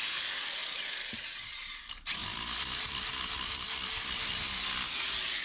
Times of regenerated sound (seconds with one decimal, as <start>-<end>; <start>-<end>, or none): none